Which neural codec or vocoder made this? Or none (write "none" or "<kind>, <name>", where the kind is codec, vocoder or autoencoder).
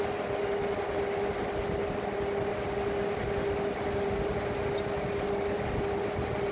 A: none